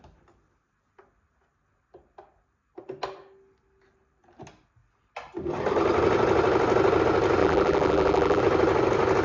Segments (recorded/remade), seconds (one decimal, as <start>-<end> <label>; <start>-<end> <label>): 0.0-7.4 recorded; 7.4-8.4 remade; 8.4-9.2 recorded